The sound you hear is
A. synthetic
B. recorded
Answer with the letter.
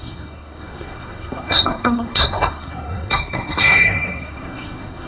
A